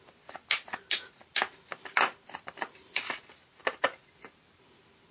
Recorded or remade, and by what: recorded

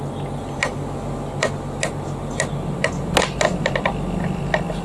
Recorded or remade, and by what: recorded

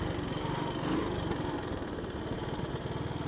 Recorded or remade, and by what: recorded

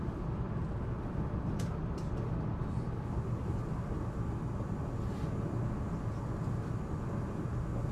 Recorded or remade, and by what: recorded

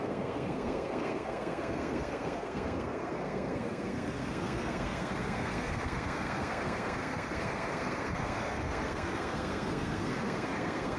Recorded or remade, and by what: remade, codec, SNAC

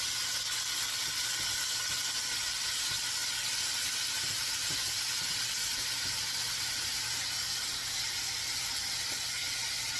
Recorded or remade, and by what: recorded